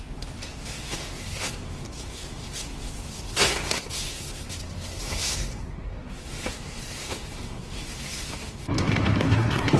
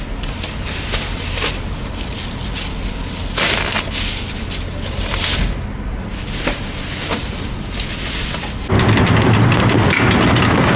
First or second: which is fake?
first